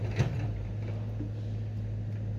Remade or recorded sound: recorded